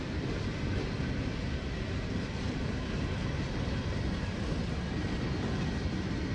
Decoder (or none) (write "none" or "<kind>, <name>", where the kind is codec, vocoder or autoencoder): none